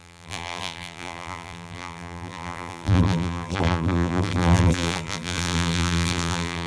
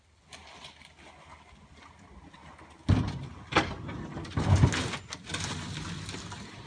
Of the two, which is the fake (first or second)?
first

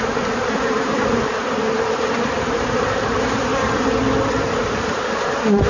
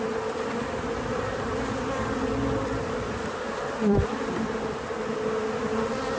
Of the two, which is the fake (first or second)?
first